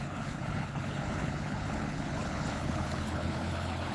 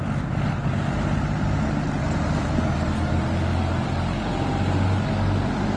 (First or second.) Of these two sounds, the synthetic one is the first